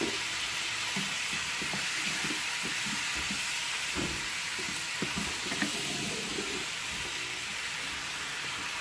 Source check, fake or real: real